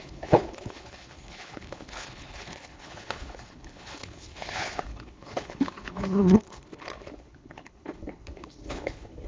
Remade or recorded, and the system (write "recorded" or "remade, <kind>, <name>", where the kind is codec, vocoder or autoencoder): remade, codec, HILCodec